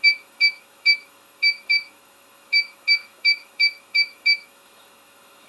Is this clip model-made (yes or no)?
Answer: yes